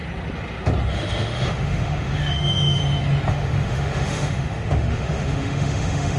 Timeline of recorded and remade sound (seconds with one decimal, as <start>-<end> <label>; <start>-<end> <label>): 0.0-0.9 recorded; 0.9-2.8 remade; 2.8-3.3 recorded; 3.3-6.2 remade